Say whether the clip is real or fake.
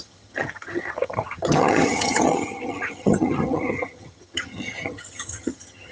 fake